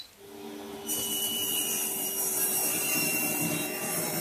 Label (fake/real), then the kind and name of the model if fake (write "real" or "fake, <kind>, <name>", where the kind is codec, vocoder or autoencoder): fake, vocoder, BigVGAN v2